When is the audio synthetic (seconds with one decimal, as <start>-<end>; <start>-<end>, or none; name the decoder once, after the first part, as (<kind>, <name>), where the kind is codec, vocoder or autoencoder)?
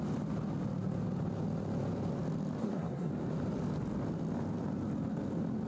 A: 2.6-3.1 (codec, SNAC)